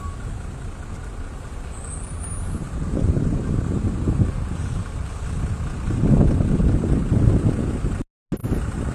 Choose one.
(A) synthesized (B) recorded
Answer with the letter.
B